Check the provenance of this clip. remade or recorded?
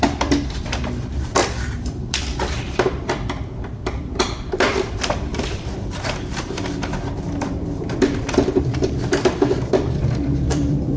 remade